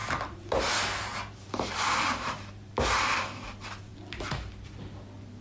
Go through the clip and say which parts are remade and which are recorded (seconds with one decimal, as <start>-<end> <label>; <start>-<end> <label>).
0.0-3.2 remade; 3.2-5.4 recorded